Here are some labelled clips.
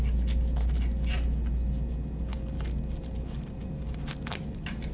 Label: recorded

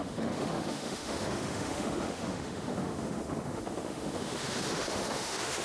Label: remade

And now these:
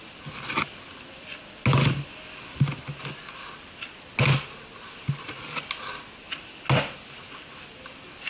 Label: recorded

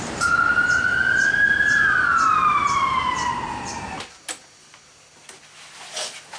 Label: recorded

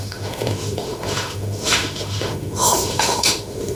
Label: remade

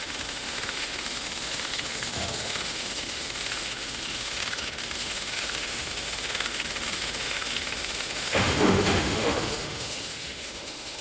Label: remade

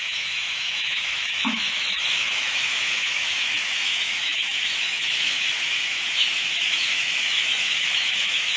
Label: remade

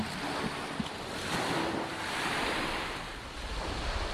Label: recorded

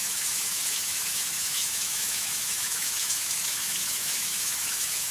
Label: remade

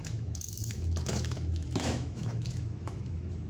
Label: remade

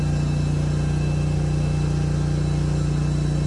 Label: recorded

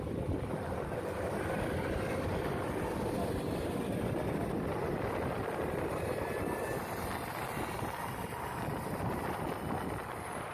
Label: recorded